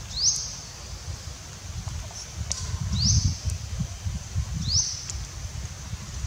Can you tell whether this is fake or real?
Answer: real